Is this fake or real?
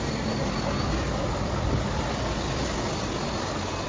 real